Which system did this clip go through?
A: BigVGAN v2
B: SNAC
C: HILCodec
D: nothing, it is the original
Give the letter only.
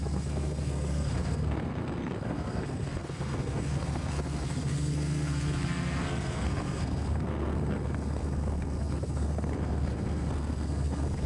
B